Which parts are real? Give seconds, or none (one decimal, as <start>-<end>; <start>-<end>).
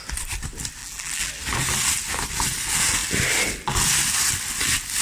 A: 0.0-0.8; 1.3-5.0